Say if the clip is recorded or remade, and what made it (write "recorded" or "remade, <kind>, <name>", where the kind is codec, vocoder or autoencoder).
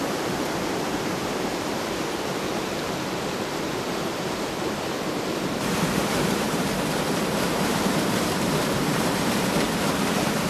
remade, vocoder, BigVGAN v2